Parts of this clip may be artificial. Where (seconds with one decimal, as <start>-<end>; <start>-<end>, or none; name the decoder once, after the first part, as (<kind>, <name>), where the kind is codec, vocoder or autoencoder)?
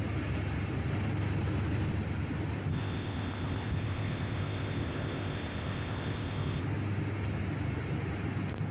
2.7-6.6 (codec, ZipCodec)